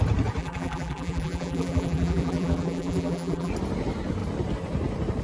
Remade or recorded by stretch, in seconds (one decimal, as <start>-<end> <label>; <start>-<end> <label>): 0.0-0.4 recorded; 0.4-3.5 remade; 3.5-5.2 recorded

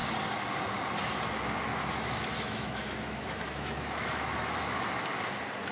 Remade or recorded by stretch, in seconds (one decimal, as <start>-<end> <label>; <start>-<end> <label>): 0.0-1.7 recorded; 1.7-4.9 remade; 4.9-5.7 recorded

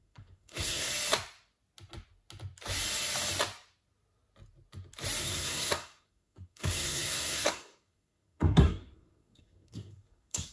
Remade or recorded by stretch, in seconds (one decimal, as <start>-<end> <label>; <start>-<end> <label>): 0.0-0.9 remade; 0.9-5.2 recorded; 5.2-10.5 remade